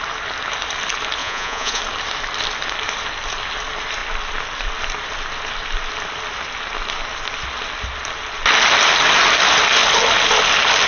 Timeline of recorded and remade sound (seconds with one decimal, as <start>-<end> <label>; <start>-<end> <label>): 0.0-1.2 recorded; 1.2-1.8 remade; 1.8-10.9 recorded